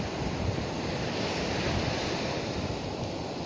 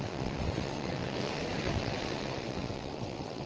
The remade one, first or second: second